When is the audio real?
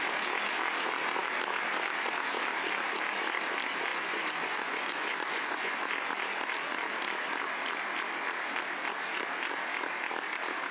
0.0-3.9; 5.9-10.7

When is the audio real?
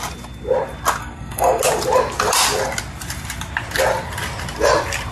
0.0-1.0; 1.6-5.1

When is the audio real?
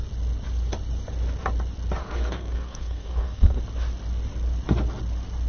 0.0-2.0; 3.6-5.5